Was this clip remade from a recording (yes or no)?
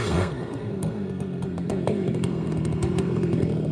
yes